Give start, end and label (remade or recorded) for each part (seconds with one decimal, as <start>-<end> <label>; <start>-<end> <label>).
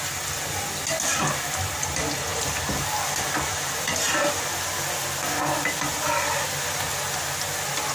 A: 0.0-2.3 recorded; 2.3-4.6 remade; 4.6-7.9 recorded